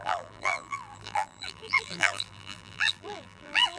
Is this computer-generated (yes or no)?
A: yes